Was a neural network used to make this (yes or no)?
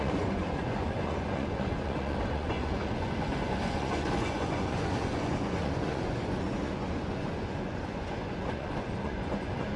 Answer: yes